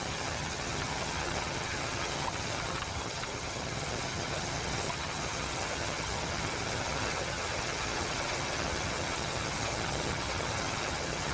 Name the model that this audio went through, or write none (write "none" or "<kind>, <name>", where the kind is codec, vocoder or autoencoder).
vocoder, HiFi-GAN